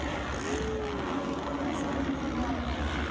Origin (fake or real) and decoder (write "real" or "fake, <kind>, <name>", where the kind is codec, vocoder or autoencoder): real